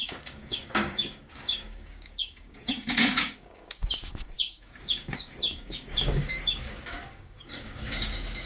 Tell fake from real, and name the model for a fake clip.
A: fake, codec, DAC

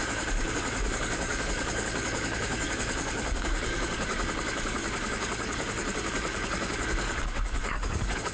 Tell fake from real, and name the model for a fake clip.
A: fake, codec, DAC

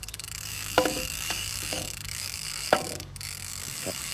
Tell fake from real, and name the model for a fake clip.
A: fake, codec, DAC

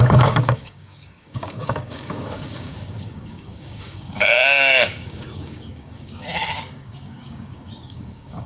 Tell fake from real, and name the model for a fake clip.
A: fake, codec, DAC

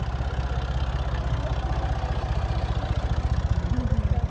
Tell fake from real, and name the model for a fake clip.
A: real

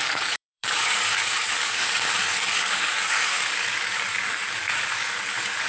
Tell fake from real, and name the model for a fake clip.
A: fake, codec, DAC